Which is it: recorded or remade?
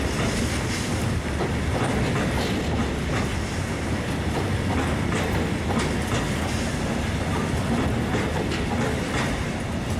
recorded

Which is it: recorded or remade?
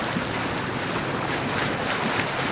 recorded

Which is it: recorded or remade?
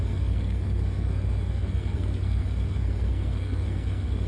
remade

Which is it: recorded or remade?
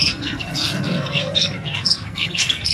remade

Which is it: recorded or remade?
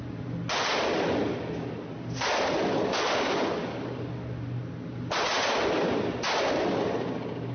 recorded